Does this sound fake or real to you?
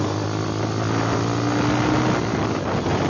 real